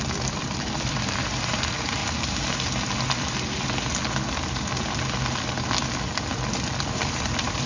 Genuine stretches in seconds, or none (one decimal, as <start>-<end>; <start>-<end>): 2.0-6.6